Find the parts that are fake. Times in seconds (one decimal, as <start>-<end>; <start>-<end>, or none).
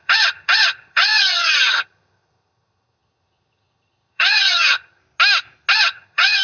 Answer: 0.0-5.0; 5.7-6.4